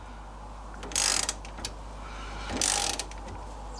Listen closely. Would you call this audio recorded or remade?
recorded